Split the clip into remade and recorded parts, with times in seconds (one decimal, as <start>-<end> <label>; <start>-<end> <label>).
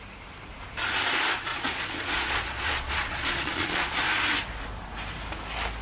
0.0-1.5 recorded; 1.5-4.0 remade; 4.0-5.8 recorded